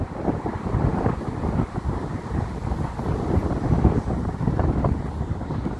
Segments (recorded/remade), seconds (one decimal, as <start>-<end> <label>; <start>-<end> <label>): 0.0-5.8 recorded